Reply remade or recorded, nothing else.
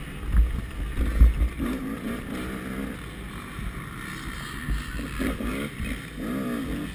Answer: recorded